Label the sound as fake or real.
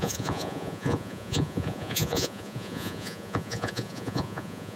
fake